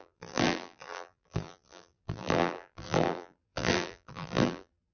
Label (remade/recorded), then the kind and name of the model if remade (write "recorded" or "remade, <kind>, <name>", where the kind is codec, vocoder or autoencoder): remade, vocoder, BigVGAN v2